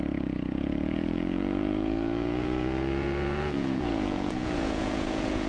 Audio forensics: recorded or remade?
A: remade